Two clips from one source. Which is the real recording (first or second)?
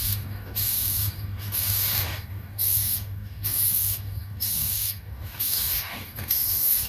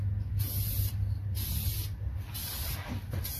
second